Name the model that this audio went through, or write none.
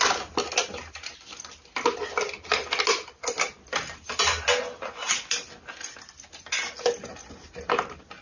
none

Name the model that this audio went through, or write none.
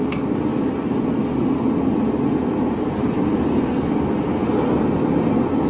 none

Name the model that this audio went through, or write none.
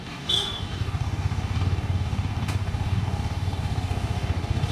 codec, DAC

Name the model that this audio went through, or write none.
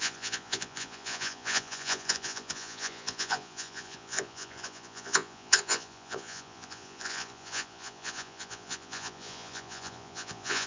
vocoder, Vocos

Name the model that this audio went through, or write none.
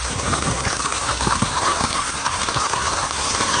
codec, SNAC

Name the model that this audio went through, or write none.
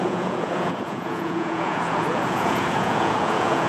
vocoder, Vocos